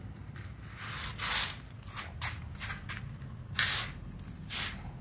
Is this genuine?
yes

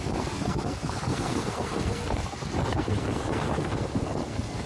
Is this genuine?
no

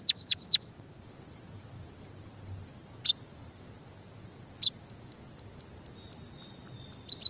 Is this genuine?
yes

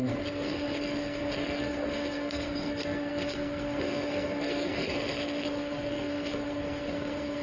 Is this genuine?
no